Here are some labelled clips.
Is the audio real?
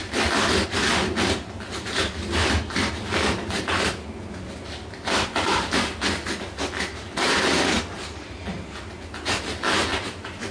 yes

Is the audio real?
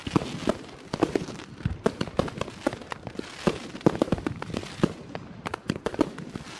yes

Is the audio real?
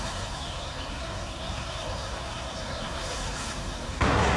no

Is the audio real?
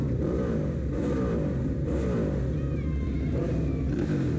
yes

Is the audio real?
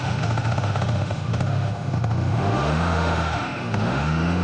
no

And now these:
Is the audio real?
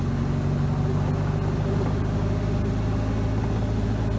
yes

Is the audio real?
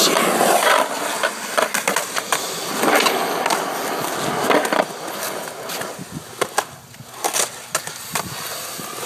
yes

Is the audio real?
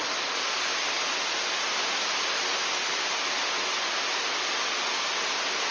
yes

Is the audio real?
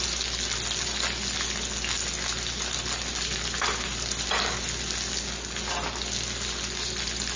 yes